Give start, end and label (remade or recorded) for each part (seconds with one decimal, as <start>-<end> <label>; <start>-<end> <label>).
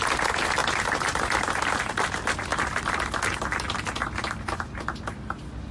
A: 0.0-5.7 recorded